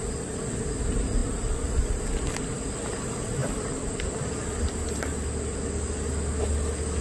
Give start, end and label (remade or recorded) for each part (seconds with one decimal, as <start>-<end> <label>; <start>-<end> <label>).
0.0-1.2 recorded; 1.2-2.0 remade; 2.0-7.0 recorded